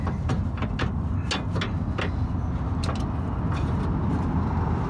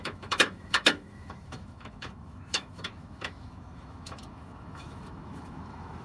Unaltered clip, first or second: first